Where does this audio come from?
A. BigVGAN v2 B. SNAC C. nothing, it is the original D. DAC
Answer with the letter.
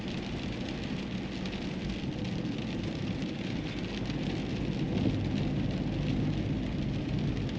C